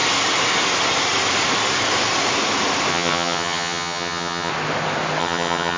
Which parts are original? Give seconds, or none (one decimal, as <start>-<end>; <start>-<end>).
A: 0.0-2.9; 4.5-5.2